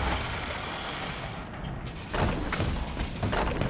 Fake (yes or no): no